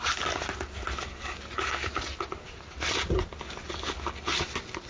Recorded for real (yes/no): yes